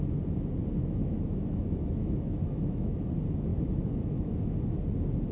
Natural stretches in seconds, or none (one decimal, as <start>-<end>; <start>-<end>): 0.0-0.8; 3.1-3.5; 4.3-5.3